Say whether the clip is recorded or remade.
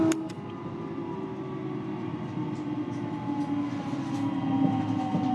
recorded